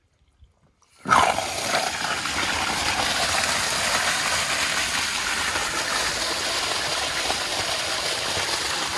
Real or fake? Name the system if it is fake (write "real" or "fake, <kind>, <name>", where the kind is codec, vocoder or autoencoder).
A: real